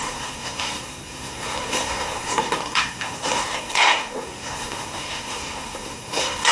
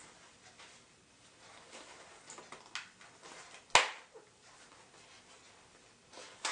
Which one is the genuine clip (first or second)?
second